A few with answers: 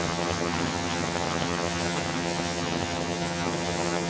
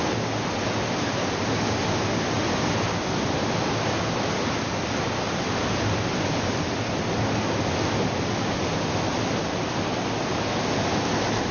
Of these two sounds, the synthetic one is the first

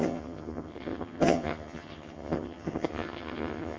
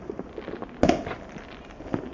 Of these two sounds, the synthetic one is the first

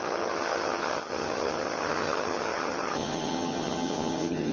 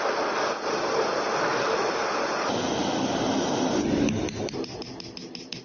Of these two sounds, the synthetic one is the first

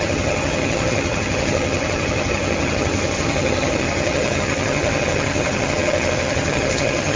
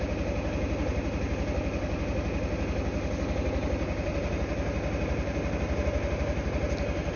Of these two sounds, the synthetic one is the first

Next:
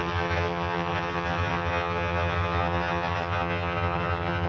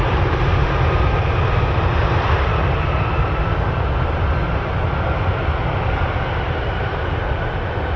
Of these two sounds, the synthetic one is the first